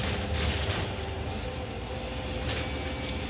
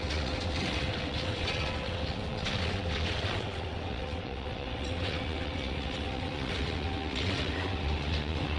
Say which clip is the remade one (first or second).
second